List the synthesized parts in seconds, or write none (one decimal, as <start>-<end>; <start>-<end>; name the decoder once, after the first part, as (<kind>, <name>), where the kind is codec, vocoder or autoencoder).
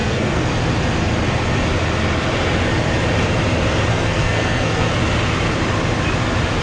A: 0.0-0.5 (codec, SNAC); 3.9-5.0